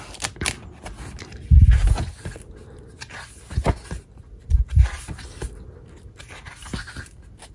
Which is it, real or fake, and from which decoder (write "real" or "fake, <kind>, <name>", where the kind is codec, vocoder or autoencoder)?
real